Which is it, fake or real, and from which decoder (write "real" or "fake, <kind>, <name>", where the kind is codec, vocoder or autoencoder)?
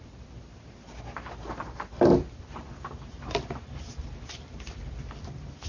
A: real